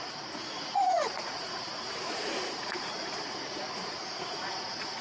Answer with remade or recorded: remade